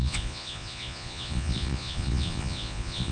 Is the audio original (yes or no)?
no